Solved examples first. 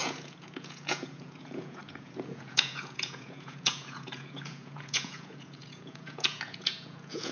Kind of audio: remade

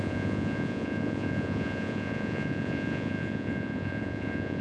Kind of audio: remade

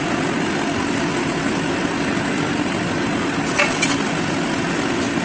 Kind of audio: recorded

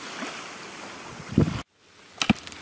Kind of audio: recorded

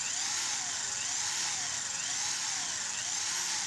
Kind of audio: recorded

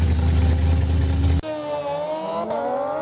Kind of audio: recorded